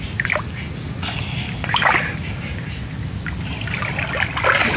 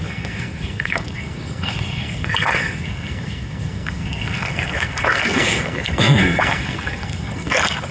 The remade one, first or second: second